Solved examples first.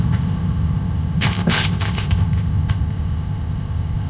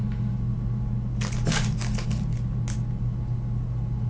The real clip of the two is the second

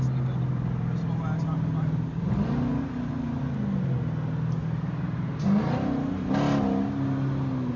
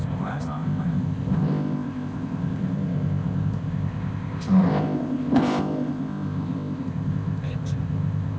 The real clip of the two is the first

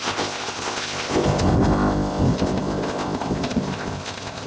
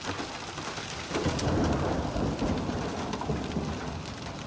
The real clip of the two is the second